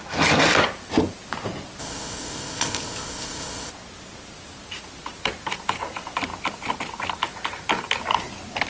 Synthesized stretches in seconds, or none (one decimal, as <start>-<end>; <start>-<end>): 1.8-3.7